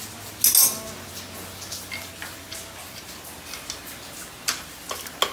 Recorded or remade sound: recorded